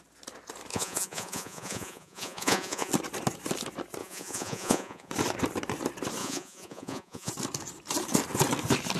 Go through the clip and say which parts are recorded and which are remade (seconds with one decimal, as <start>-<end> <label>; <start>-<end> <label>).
0.0-0.7 recorded; 0.7-2.9 remade; 2.9-4.0 recorded; 4.0-5.1 remade; 5.1-6.2 recorded; 6.2-7.3 remade; 7.3-9.0 recorded